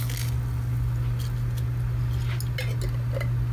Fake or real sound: real